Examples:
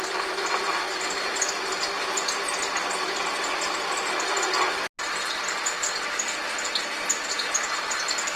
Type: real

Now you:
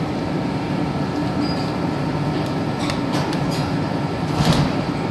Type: fake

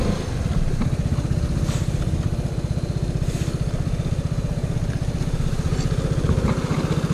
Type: real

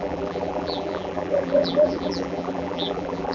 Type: fake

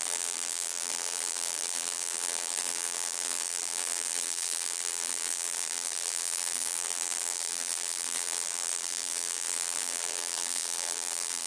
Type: fake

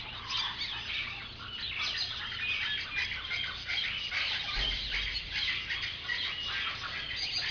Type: real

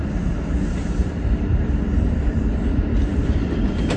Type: real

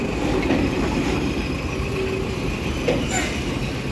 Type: real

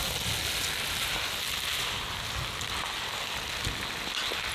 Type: real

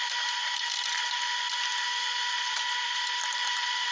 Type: fake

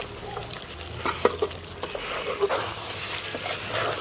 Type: real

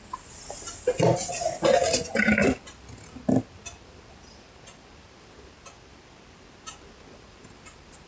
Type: real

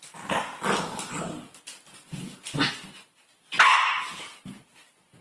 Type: real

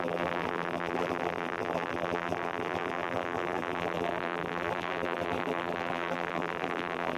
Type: fake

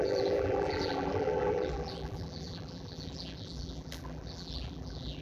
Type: fake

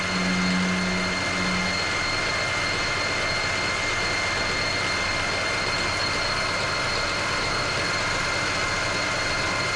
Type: real